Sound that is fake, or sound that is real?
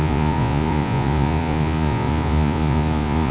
fake